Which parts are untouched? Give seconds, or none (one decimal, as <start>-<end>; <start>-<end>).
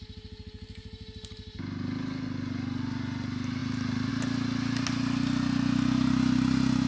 0.0-3.6; 4.1-6.9